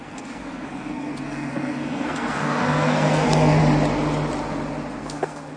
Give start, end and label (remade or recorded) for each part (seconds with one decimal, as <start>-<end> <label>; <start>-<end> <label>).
0.0-3.6 remade; 3.6-5.0 recorded; 5.0-5.6 remade